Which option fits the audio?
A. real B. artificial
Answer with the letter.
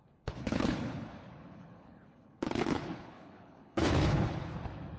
B